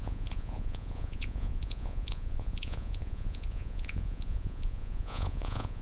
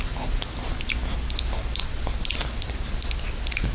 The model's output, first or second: first